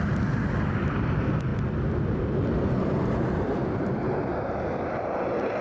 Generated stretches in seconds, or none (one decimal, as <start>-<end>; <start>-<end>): none